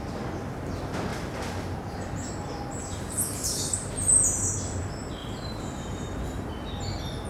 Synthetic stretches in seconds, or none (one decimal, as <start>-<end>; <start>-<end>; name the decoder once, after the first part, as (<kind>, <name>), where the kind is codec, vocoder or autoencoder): 2.8-3.9 (vocoder, BigVGAN v2); 5.2-6.5